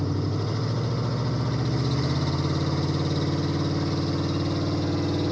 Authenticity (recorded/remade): recorded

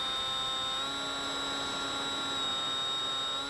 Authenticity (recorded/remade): recorded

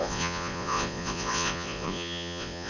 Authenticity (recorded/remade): remade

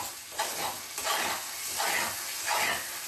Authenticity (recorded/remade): recorded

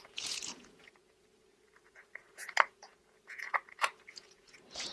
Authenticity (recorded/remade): remade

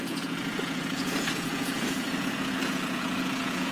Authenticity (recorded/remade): remade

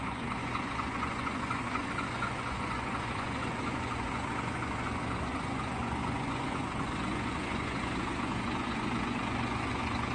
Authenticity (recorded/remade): remade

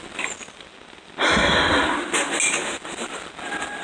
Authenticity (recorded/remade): recorded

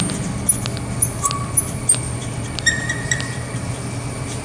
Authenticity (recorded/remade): recorded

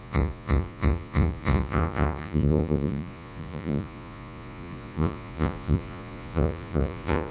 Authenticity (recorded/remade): remade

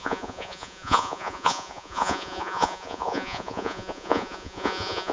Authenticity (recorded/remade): remade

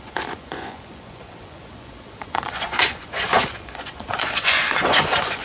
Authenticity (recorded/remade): remade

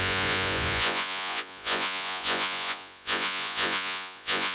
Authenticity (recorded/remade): remade